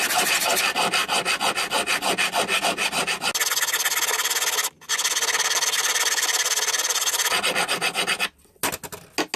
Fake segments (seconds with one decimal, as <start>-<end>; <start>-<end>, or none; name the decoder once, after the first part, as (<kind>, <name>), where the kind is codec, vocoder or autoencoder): none